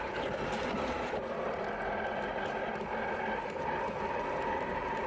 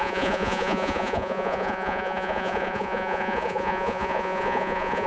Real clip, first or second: first